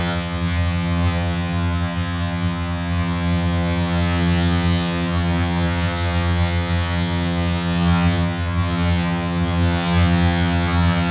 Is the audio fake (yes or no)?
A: yes